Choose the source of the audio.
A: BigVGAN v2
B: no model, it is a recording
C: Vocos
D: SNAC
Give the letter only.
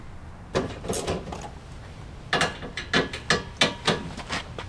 B